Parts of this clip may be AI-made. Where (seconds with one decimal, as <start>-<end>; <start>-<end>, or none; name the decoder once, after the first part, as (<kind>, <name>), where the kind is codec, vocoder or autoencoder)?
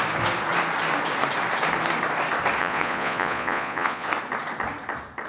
2.6-4.1 (vocoder, Vocos)